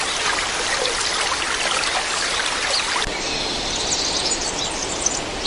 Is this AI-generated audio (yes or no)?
no